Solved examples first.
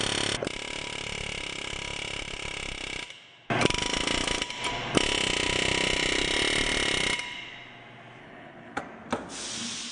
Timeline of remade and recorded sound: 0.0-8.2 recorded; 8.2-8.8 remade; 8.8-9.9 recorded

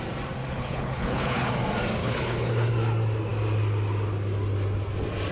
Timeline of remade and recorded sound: 0.0-0.4 recorded; 0.4-1.5 remade; 1.5-2.0 recorded; 2.0-2.7 remade; 2.7-5.3 recorded

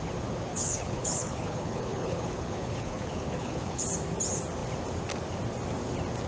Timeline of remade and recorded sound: 0.0-0.5 recorded; 0.5-3.8 remade; 3.8-6.3 recorded

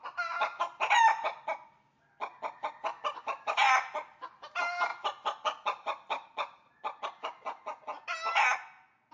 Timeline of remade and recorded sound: 0.0-9.1 recorded

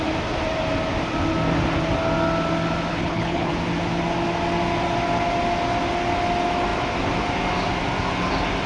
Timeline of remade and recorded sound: 0.0-2.9 recorded; 2.9-3.5 remade; 3.5-8.7 recorded